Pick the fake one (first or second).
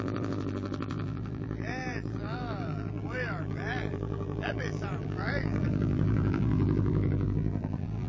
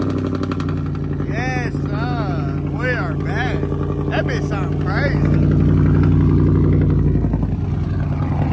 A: first